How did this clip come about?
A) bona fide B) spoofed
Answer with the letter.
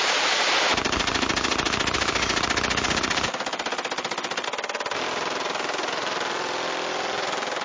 A